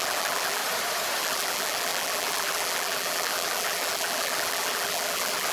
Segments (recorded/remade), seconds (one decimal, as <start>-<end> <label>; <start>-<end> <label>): 0.0-0.6 remade; 0.6-1.2 recorded; 1.2-5.5 remade